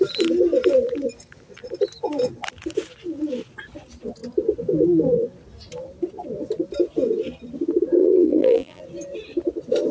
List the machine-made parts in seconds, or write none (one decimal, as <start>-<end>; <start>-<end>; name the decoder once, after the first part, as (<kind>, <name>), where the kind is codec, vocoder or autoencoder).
8.0-8.8 (vocoder, BigVGAN v2)